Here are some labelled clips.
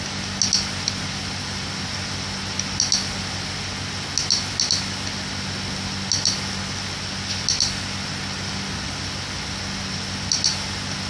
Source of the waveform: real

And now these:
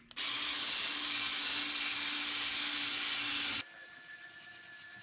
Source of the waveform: real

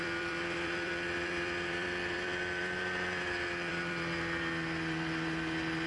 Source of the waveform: fake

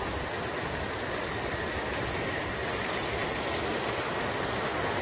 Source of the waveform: real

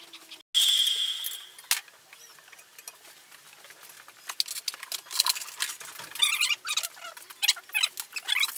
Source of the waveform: real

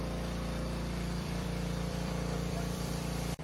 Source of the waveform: fake